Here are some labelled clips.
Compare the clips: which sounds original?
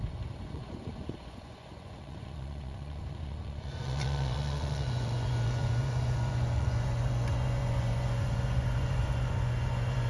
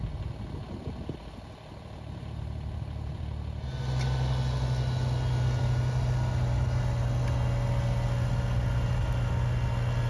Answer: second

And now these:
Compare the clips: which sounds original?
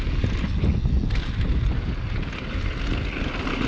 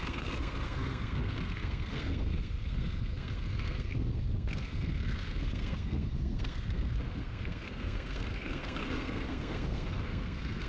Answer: first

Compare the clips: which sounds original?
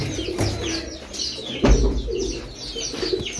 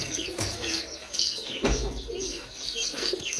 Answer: first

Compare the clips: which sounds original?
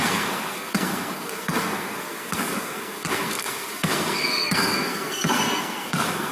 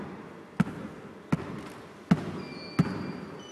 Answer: second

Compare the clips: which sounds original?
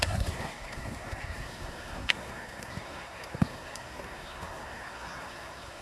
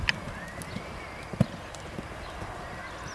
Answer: second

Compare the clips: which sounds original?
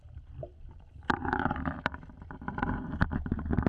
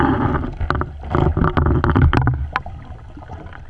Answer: second